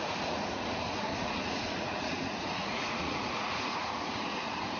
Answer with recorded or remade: remade